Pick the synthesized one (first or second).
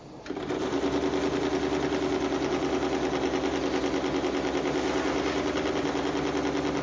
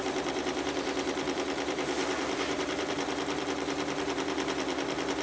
second